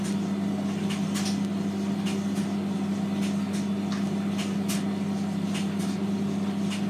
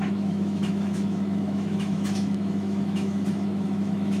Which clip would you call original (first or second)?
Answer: first